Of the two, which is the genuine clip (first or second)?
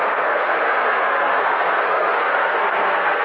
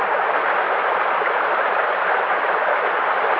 second